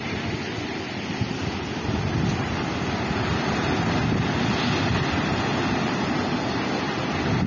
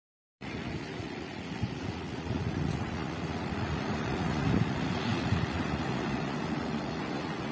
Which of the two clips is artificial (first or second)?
second